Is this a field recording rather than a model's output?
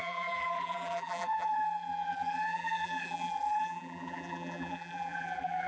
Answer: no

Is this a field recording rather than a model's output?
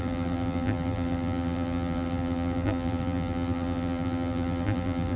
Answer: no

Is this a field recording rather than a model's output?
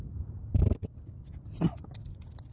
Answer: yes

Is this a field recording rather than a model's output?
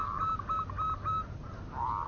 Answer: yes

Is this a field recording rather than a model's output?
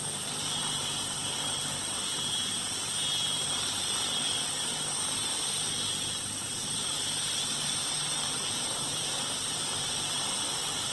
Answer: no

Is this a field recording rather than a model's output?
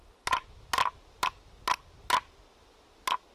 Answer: yes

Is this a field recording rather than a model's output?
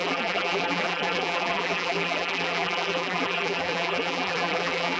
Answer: no